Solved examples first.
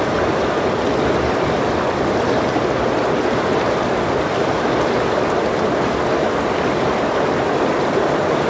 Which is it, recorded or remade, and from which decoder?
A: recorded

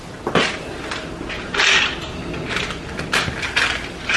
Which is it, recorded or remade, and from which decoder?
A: recorded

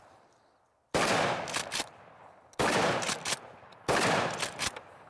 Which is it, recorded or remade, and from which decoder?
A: recorded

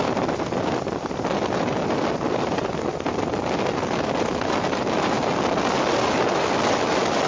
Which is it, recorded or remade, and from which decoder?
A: recorded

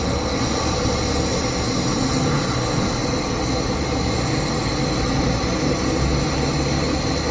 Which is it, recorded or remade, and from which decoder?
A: recorded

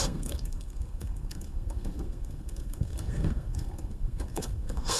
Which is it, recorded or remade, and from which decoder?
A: remade, codec, SNAC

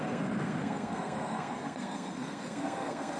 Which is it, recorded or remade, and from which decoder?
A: remade, codec, SNAC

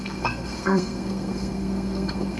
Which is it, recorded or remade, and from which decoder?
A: remade, codec, SNAC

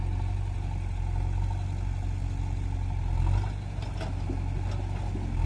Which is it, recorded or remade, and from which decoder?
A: recorded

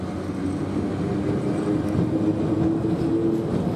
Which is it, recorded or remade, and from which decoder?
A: recorded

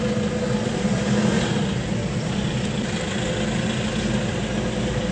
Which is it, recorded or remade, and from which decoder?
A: recorded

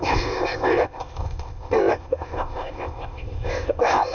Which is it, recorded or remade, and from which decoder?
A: remade, codec, ZipCodec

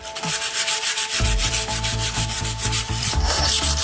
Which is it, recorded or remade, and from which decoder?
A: remade, vocoder, BigVGAN v2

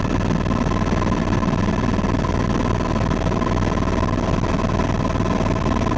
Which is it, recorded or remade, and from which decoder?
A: recorded